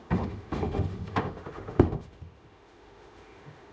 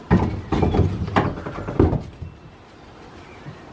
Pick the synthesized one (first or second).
first